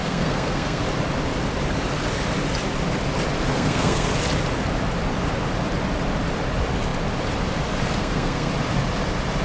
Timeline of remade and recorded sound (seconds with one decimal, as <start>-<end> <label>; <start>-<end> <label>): 0.0-0.8 remade; 0.8-3.5 recorded; 3.5-4.1 remade; 4.1-8.0 recorded; 8.0-8.5 remade; 8.5-9.4 recorded

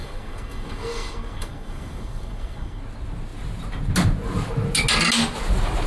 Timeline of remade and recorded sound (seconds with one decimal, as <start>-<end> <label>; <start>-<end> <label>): 0.0-2.8 remade; 2.8-5.9 recorded

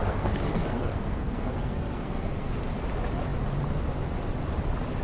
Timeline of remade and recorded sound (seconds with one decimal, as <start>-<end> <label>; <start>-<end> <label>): 0.0-2.5 remade; 2.5-5.0 recorded

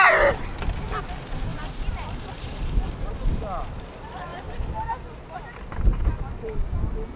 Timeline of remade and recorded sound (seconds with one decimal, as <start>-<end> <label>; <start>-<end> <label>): 0.0-7.2 recorded

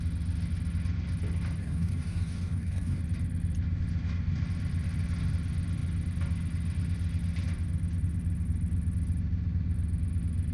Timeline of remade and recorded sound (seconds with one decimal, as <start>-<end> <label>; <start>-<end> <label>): 0.0-1.6 recorded; 1.6-3.0 remade; 3.0-10.5 recorded

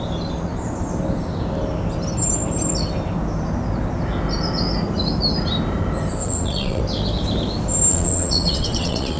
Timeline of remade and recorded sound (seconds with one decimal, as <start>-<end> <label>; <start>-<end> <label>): 0.0-6.2 recorded; 6.2-6.8 remade; 6.8-7.9 recorded; 7.9-9.2 remade

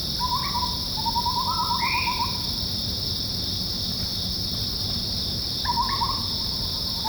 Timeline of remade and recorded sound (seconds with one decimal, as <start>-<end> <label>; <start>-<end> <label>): 0.0-7.1 recorded